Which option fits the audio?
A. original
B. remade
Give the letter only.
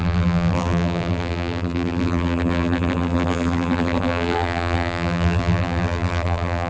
B